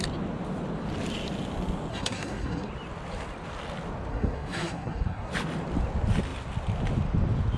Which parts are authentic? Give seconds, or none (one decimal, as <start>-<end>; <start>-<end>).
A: 0.0-1.9; 2.7-4.1; 5.3-7.6

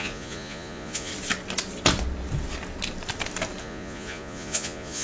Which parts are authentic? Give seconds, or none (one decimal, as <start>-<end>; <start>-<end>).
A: 1.1-3.6

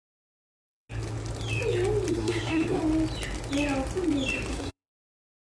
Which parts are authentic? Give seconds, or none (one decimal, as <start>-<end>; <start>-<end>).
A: 0.0-2.1; 2.8-4.5

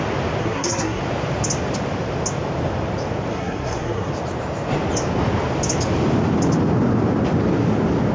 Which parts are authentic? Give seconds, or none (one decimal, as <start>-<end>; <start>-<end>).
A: 0.0-0.4; 1.0-3.3; 4.1-8.1